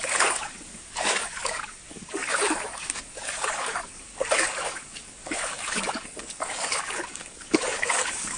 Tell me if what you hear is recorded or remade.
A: remade